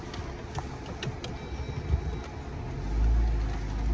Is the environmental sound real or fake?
real